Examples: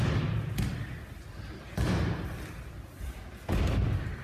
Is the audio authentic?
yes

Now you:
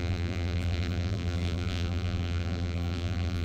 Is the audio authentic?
no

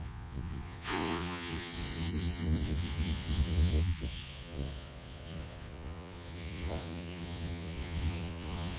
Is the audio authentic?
no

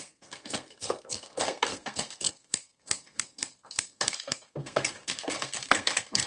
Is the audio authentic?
no